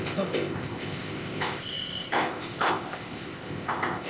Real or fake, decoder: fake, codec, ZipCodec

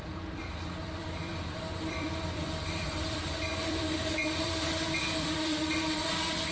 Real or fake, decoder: fake, vocoder, BigVGAN v2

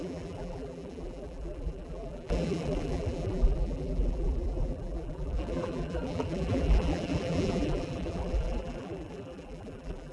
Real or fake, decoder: fake, vocoder, BigVGAN v2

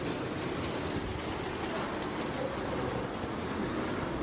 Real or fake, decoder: real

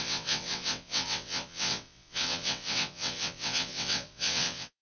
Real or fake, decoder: fake, vocoder, WaveNeXt